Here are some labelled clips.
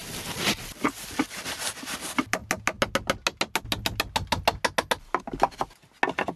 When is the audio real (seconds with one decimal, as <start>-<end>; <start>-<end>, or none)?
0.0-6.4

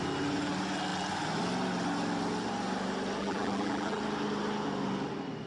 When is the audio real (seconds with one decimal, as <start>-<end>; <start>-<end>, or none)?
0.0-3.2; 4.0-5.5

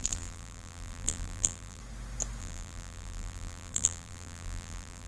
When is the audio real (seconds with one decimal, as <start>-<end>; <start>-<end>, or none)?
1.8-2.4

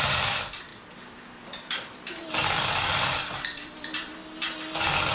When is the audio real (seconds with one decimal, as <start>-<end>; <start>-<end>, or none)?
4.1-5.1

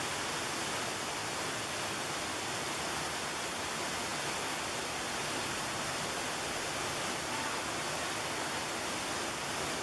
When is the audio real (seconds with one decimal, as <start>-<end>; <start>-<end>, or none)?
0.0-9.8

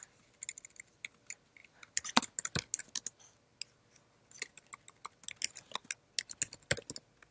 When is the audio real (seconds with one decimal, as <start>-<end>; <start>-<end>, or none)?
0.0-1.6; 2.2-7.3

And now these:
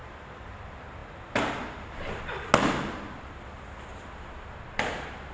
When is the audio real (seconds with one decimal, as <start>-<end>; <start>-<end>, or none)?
0.6-5.3

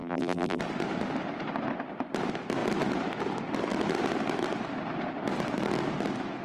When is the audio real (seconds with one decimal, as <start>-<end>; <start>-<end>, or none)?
0.6-6.4